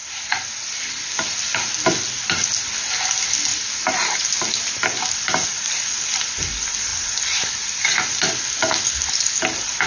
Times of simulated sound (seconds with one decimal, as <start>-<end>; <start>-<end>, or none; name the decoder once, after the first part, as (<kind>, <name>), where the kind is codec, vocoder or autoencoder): none